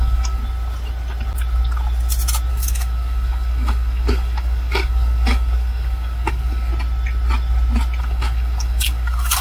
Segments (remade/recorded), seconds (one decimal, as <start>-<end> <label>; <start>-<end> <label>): 0.0-0.4 remade; 0.4-2.5 recorded; 2.5-6.7 remade; 6.7-8.0 recorded; 8.0-9.4 remade